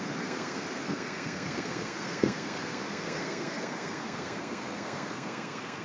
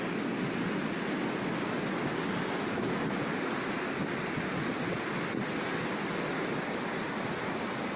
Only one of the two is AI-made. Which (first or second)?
first